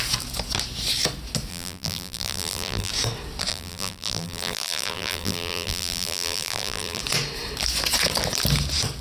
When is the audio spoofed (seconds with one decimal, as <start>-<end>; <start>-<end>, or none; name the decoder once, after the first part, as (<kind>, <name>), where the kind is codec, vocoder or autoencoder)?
1.5-2.9 (vocoder, BigVGAN v2); 3.5-7.0